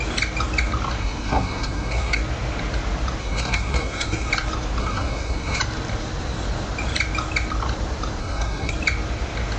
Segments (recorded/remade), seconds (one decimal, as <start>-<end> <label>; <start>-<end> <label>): 0.0-1.0 recorded; 1.0-2.2 remade; 2.2-3.2 recorded; 3.2-4.3 remade; 4.3-4.8 recorded; 4.8-5.6 remade; 5.6-8.2 recorded; 8.2-8.7 remade; 8.7-9.6 recorded